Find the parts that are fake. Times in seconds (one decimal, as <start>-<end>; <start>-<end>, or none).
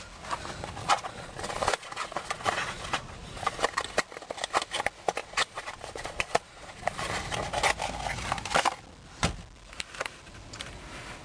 0.8-3.6; 5.2-7.1